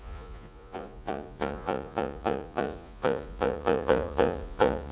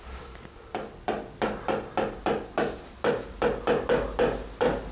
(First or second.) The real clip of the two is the second